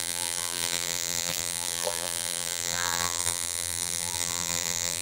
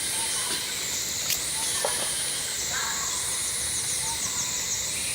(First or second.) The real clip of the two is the second